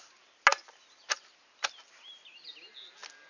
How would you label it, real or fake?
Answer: real